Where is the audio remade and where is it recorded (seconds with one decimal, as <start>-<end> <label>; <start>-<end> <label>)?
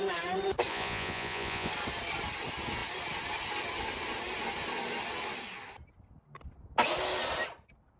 0.0-0.7 recorded; 0.7-1.7 remade; 1.7-8.0 recorded